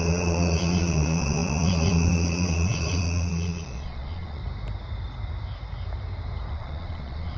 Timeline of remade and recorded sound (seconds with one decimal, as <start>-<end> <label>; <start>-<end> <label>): 0.0-4.4 remade; 4.4-6.5 recorded; 6.5-7.4 remade